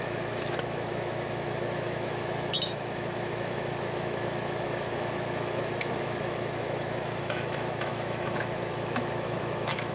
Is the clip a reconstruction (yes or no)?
yes